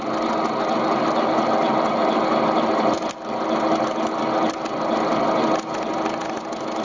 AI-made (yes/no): no